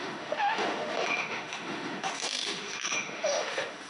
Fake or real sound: fake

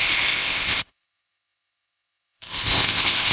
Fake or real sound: fake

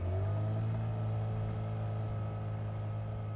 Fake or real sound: real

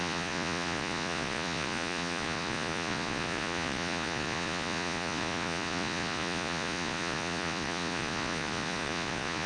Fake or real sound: fake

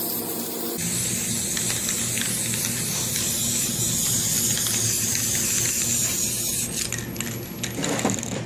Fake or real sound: real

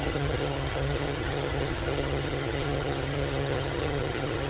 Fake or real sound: fake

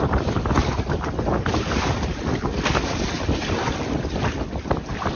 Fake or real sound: real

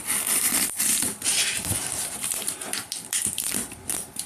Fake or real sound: fake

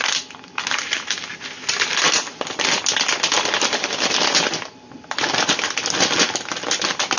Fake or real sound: real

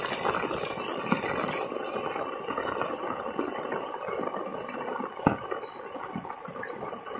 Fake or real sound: real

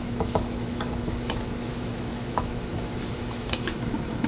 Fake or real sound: fake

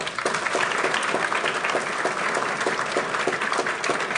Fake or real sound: real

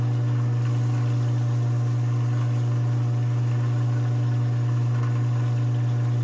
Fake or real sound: real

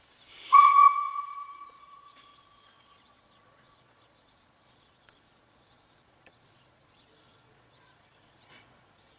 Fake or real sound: fake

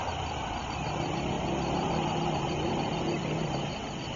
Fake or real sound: real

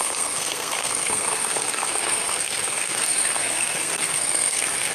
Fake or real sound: fake